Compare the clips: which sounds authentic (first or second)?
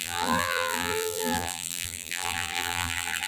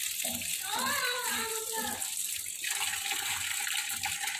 second